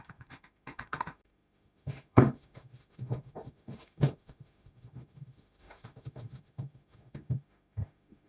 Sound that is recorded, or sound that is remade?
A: remade